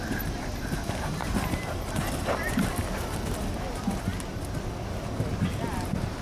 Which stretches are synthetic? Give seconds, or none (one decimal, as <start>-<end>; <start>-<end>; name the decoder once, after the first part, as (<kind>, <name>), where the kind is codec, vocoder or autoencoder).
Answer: 1.2-1.9 (vocoder, BigVGAN v2)